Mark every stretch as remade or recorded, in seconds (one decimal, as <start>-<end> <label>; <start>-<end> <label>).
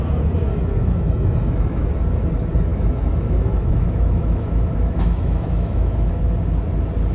0.0-0.5 recorded; 0.5-1.9 remade; 1.9-2.7 recorded; 2.7-6.1 remade; 6.1-7.1 recorded